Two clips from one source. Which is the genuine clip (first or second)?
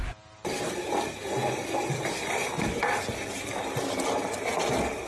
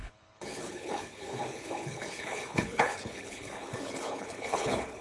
first